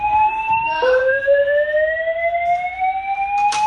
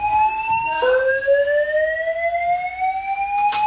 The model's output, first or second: first